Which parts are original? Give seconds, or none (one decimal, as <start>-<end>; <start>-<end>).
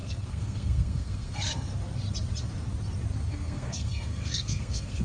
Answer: 1.7-3.3